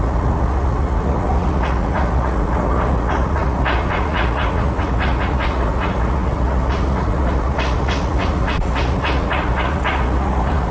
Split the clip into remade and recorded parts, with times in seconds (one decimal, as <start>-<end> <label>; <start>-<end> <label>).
0.0-10.7 remade